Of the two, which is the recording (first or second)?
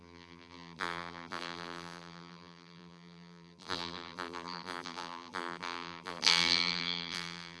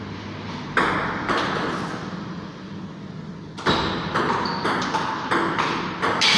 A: second